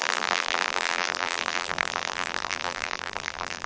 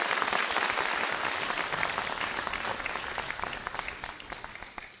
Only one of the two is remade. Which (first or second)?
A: first